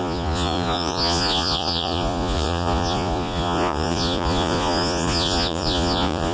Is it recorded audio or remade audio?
remade